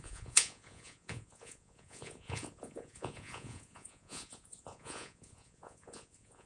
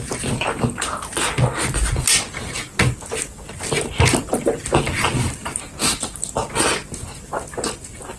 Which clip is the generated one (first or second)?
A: first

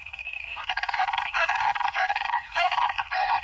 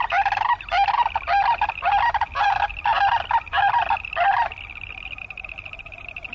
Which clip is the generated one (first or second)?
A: first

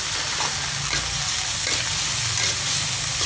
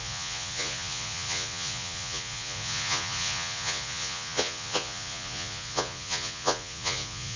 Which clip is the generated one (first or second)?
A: second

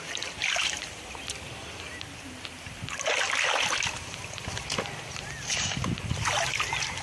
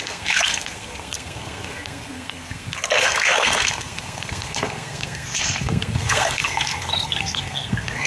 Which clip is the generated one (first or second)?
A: second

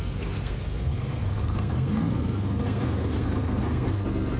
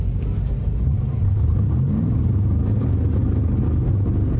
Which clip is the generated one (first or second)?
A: first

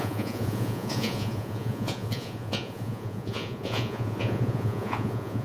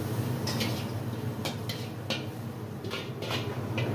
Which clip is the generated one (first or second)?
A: first